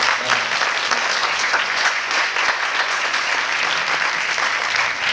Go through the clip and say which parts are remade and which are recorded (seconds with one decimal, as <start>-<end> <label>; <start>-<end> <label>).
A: 0.0-1.2 recorded; 1.2-3.3 remade; 3.3-5.1 recorded